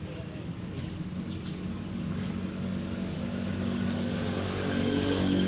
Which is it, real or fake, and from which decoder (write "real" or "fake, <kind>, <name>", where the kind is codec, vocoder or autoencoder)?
fake, codec, DAC